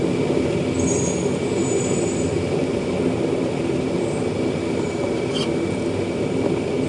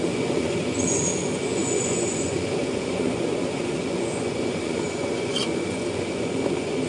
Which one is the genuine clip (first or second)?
first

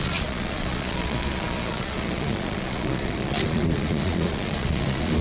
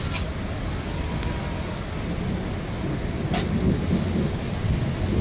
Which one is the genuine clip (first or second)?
second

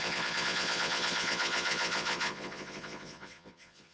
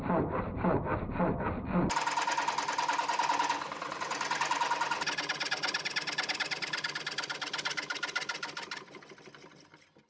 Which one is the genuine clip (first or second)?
second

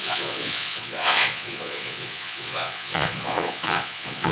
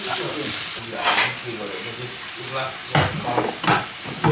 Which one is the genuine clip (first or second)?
second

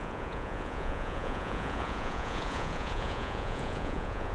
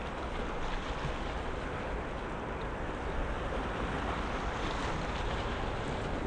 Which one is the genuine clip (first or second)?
second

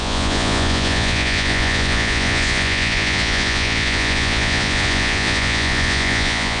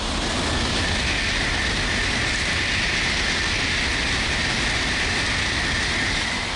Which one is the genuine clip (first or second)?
second